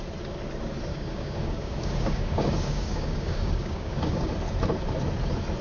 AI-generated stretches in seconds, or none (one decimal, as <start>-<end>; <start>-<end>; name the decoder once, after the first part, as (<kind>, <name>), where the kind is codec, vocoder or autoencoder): 0.9-4.3 (codec, DAC)